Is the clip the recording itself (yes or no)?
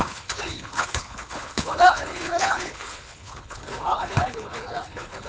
no